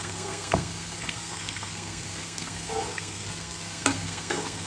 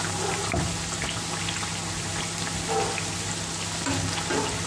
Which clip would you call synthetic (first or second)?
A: first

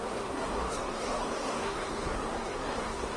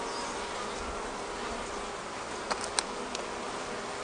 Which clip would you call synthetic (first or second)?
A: first